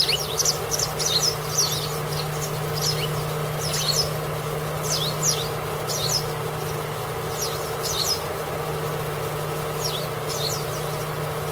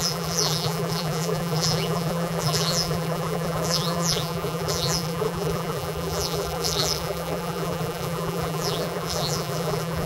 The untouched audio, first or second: first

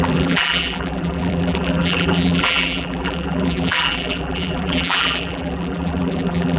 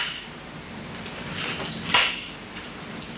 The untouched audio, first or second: second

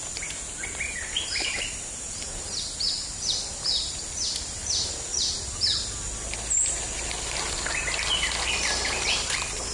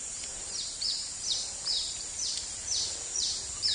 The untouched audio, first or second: first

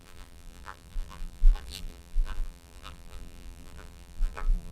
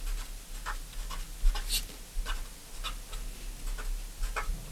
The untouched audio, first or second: second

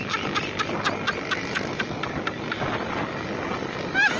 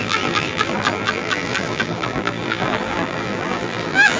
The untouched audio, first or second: first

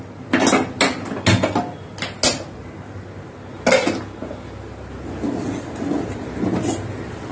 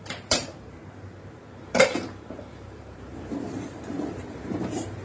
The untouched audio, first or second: first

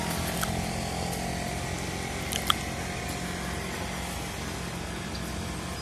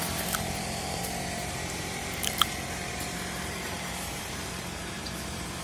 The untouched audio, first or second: first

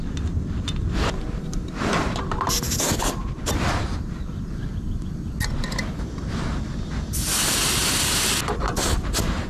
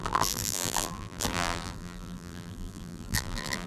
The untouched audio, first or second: first